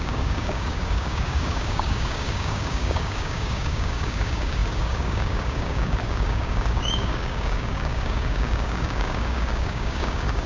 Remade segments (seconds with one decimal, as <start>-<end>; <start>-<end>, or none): 0.0-10.5

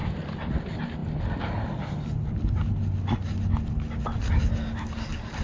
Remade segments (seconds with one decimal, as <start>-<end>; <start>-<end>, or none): none